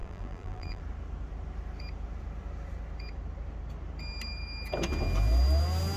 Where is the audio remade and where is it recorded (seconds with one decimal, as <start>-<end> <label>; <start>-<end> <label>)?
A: 0.0-0.8 remade; 0.8-6.0 recorded